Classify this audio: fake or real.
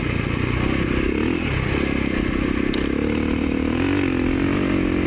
real